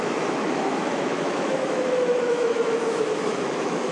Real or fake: fake